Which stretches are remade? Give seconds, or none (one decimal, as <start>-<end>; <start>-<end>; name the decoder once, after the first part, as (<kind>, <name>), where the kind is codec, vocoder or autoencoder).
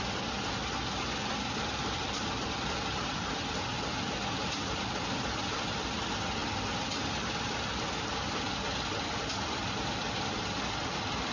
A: none